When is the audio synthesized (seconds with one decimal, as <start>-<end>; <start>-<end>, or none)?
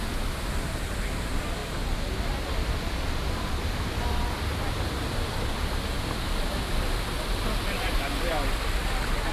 none